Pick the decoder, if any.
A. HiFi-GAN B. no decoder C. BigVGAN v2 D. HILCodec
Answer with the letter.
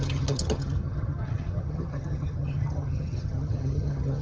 A